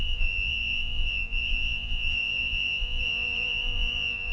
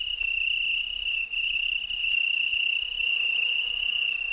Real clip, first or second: second